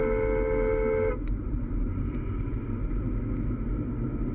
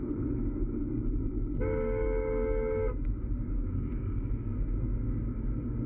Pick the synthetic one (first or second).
second